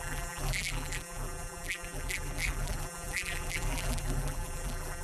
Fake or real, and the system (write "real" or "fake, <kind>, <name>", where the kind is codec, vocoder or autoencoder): fake, vocoder, BigVGAN v2